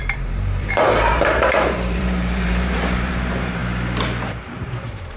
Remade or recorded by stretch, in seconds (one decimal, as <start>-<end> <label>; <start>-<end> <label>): 0.0-3.6 remade; 3.6-4.3 recorded; 4.3-5.2 remade